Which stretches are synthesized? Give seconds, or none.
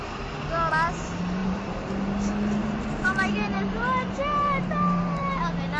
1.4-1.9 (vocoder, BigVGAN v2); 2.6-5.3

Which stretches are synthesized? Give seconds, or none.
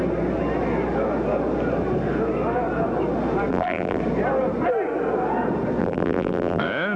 3.5-4.0 (vocoder, BigVGAN v2); 5.8-6.6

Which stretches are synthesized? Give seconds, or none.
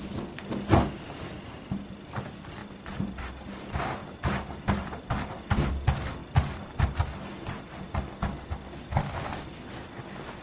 2.6-3.3 (vocoder, BigVGAN v2); 4.0-5.7; 6.2-8.0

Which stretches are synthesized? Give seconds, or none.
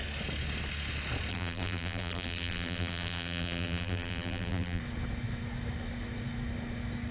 1.3-4.8 (vocoder, BigVGAN v2)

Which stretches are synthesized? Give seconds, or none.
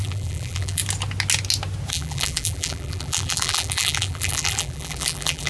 0.0-0.8 (vocoder, BigVGAN v2); 1.9-5.5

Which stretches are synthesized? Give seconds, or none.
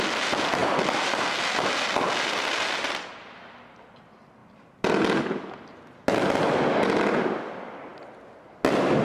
none